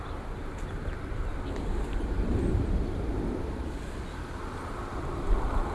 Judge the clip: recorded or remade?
recorded